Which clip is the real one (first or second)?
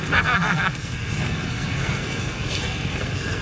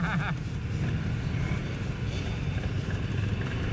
second